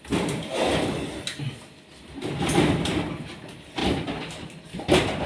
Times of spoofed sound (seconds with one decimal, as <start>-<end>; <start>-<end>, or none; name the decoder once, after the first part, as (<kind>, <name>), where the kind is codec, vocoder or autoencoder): none